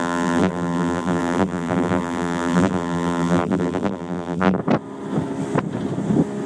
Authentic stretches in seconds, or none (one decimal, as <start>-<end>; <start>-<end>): 4.6-6.5